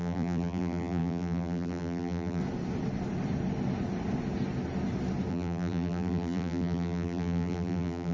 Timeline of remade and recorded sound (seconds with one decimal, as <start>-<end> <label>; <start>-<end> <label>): 0.0-2.4 remade; 2.4-5.3 recorded; 5.3-8.1 remade